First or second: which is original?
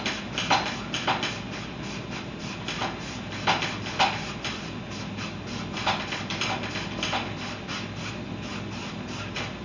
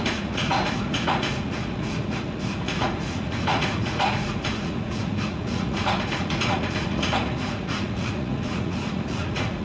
first